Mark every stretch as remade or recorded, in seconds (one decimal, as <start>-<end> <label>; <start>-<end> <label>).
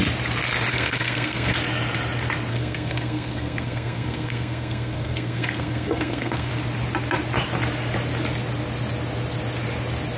0.0-0.7 recorded; 0.7-1.5 remade; 1.5-2.5 recorded; 2.5-6.5 remade; 6.5-10.2 recorded